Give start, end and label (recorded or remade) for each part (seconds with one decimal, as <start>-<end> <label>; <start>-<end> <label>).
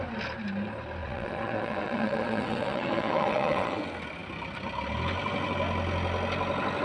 0.0-1.0 recorded; 1.0-3.8 remade; 3.8-6.8 recorded